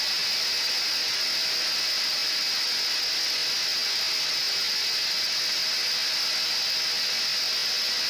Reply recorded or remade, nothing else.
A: recorded